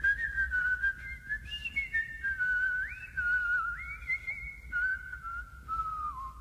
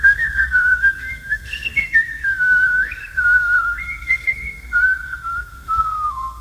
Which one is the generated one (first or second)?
second